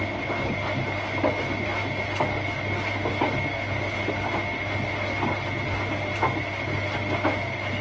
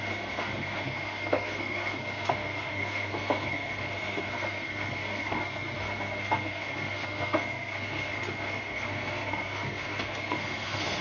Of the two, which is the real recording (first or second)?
first